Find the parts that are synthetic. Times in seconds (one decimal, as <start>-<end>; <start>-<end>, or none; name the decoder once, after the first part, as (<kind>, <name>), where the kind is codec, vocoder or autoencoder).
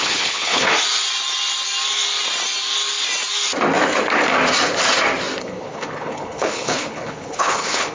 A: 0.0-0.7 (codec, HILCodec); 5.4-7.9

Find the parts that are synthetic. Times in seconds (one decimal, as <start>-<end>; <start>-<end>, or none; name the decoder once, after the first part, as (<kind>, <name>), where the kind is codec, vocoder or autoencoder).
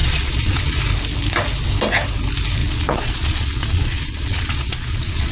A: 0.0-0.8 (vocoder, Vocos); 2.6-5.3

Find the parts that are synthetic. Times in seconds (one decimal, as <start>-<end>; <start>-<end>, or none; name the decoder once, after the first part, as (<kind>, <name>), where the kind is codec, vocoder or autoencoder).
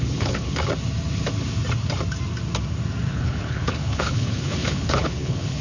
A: 0.0-0.6 (codec, HILCodec); 3.1-5.6